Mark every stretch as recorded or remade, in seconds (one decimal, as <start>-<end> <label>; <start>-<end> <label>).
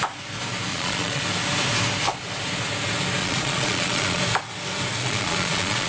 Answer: 0.0-0.7 recorded; 0.7-1.2 remade; 1.2-3.2 recorded; 3.2-4.2 remade; 4.2-5.0 recorded; 5.0-5.9 remade